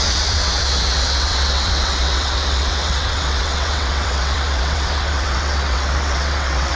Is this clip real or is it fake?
fake